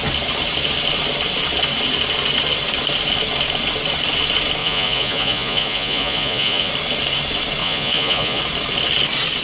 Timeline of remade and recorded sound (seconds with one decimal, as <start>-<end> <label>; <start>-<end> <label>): 0.0-4.6 recorded; 4.6-6.7 remade; 6.7-7.6 recorded; 7.6-8.4 remade; 8.4-9.4 recorded

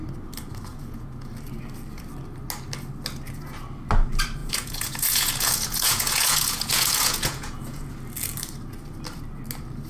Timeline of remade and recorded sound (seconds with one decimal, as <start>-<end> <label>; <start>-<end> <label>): 0.0-0.7 recorded; 0.7-1.3 remade; 1.3-4.4 recorded; 4.4-7.9 remade; 7.9-9.9 recorded

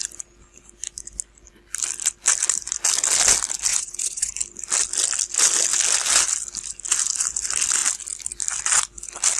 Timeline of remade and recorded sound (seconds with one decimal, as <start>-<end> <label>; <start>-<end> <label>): 0.0-3.7 recorded; 3.7-4.3 remade; 4.3-9.4 recorded

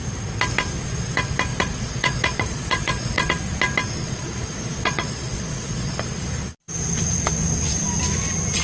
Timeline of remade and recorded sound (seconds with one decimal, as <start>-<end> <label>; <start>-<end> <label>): 0.0-1.5 recorded; 1.5-3.3 remade; 3.3-4.0 recorded; 4.0-6.0 remade; 6.0-8.6 recorded

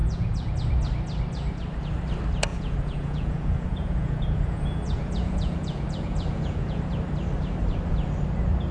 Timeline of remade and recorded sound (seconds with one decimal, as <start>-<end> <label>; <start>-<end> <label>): 0.0-0.5 remade; 0.5-2.5 recorded; 2.5-6.8 remade; 6.8-8.7 recorded

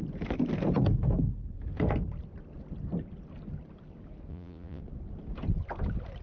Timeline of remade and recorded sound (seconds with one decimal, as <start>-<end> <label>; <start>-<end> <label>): 0.0-4.3 recorded; 4.3-4.8 remade; 4.8-6.2 recorded